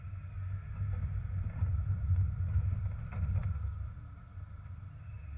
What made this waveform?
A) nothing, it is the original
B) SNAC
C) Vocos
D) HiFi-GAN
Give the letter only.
A